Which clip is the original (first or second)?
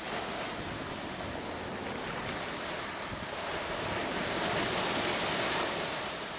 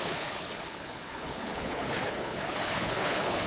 first